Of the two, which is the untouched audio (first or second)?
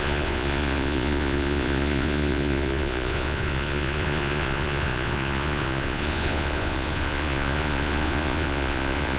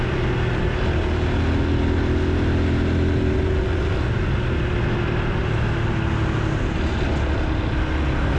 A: second